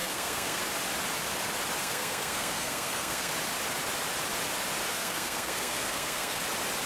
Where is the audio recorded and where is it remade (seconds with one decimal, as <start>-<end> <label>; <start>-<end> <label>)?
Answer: 0.0-0.6 remade; 0.6-1.8 recorded; 1.8-3.3 remade; 3.3-4.9 recorded; 4.9-6.4 remade; 6.4-6.9 recorded